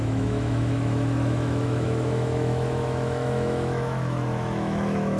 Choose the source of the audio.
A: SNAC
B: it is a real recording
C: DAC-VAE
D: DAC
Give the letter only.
C